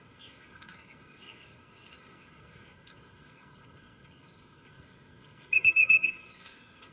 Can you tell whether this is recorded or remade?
remade